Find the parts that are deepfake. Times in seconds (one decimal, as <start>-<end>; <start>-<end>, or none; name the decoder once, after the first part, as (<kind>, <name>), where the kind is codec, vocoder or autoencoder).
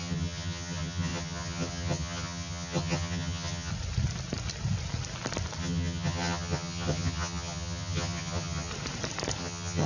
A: 0.0-3.7 (vocoder, HiFi-GAN); 5.6-8.7; 9.4-9.9